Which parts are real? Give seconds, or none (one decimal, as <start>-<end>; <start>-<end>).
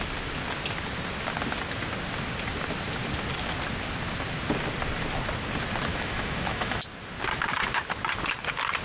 0.0-5.9; 6.8-8.8